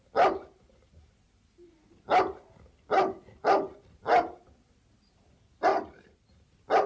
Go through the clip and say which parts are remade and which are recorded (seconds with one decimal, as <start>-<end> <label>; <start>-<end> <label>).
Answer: 0.0-6.9 recorded